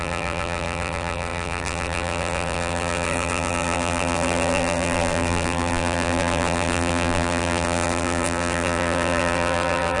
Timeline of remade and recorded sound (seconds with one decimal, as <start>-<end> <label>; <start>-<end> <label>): 0.0-10.0 remade